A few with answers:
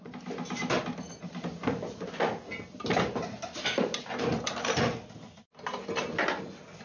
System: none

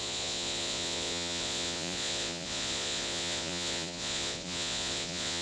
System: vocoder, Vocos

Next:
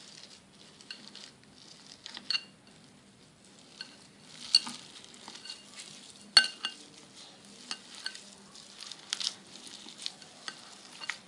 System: none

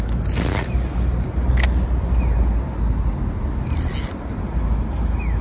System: none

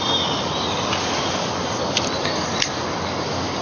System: none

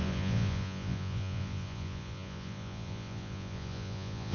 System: vocoder, Vocos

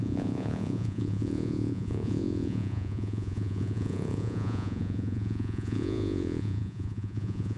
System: vocoder, Vocos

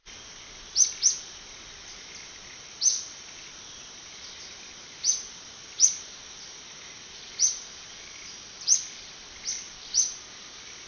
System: none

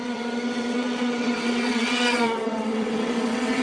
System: vocoder, WaveNeXt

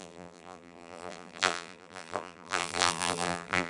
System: vocoder, BigVGAN v2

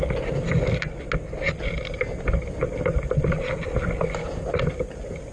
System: none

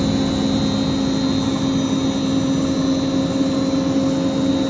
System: none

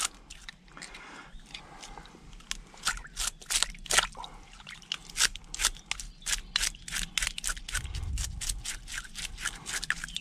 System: none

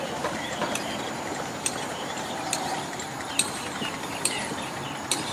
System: vocoder, BigVGAN v2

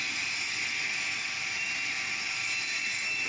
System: none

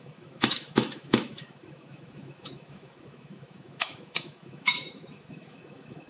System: autoencoder, DAC-VAE